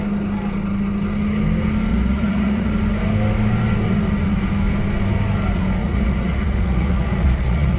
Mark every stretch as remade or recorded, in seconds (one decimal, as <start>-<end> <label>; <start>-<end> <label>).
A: 0.0-1.9 recorded; 1.9-2.7 remade; 2.7-5.8 recorded; 5.8-7.8 remade